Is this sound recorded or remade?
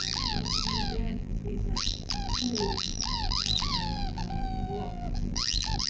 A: remade